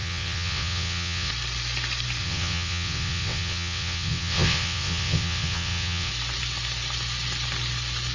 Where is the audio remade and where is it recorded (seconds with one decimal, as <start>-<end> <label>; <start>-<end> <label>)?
0.0-1.3 remade; 1.3-2.2 recorded; 2.2-6.1 remade; 6.1-8.1 recorded